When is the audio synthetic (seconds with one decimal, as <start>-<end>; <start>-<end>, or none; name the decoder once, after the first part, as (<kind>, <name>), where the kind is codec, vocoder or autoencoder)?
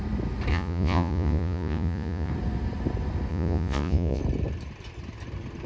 0.5-2.3 (vocoder, Vocos); 3.3-4.2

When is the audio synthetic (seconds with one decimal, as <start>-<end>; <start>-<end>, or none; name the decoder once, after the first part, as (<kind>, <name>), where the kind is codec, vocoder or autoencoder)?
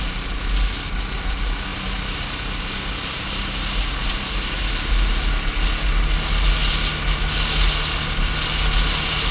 none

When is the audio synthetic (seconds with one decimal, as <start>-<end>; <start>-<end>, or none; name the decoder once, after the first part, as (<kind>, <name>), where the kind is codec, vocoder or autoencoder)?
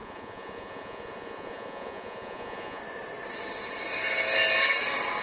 0.0-2.8 (vocoder, Vocos)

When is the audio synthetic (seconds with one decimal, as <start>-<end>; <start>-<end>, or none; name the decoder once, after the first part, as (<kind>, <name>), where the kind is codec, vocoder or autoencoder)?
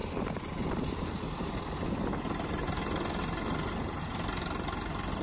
none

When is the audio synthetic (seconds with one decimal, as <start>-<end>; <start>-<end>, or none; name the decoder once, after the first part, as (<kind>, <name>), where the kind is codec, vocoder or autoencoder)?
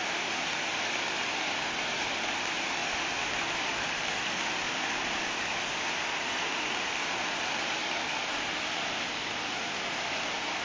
none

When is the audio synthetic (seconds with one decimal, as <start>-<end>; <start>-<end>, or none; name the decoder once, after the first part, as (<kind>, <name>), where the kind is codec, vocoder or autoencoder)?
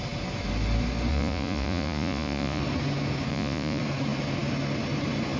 1.1-2.6 (vocoder, Vocos); 3.3-3.8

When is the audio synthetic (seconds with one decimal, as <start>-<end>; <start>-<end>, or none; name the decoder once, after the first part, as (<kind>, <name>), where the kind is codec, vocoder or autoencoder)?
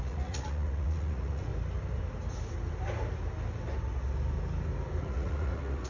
0.0-1.5 (vocoder, Vocos); 5.0-5.9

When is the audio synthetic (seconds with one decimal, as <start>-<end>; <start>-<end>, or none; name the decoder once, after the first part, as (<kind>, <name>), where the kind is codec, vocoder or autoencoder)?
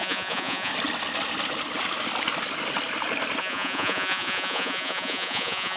0.0-0.7 (vocoder, Vocos); 3.4-5.8